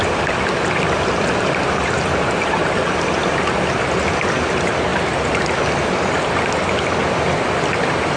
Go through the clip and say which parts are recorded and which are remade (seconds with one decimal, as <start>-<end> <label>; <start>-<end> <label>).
0.0-8.2 recorded